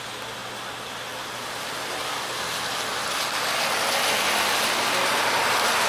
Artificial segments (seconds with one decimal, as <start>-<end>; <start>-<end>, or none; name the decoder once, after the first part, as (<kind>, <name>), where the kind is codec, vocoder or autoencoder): none